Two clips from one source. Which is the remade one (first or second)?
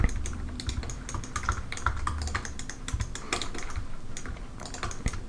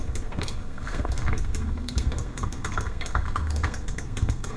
second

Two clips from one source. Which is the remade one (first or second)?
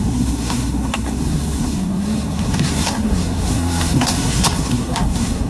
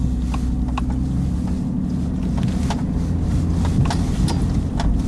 first